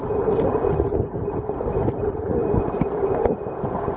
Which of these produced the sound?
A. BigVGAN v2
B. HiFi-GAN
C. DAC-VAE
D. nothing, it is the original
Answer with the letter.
D